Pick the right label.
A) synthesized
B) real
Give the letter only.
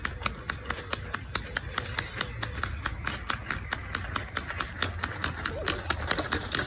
B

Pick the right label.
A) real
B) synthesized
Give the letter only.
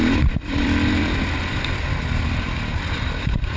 A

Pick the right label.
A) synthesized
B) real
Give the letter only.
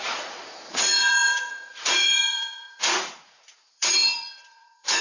A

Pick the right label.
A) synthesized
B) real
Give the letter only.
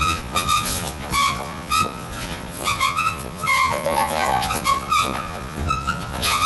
A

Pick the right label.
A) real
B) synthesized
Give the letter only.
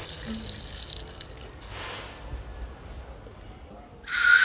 A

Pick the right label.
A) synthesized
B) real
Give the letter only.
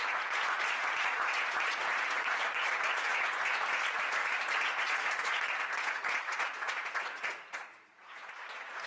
A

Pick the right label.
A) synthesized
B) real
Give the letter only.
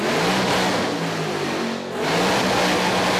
B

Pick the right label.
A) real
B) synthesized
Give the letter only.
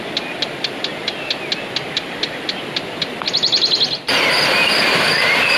A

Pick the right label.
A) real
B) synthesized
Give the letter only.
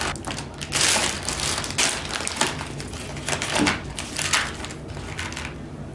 A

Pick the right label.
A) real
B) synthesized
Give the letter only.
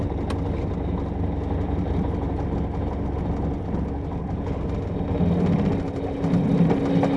A